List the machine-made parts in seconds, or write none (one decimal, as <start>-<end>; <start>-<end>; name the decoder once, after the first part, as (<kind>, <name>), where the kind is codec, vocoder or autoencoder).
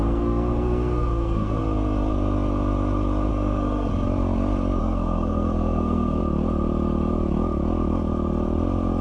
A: 0.0-1.6 (codec, SNAC); 3.3-3.9; 4.8-6.2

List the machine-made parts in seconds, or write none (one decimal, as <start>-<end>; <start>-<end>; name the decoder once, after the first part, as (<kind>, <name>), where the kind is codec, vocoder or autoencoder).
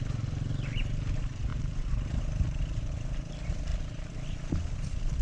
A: 1.5-2.2 (vocoder, BigVGAN v2); 3.7-4.4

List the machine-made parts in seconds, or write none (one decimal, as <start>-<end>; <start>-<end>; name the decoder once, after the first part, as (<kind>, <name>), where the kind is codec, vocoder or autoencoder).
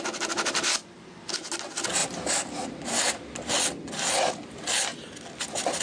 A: none